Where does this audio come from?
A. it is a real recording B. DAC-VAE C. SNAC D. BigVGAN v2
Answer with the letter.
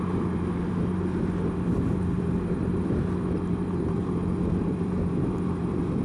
D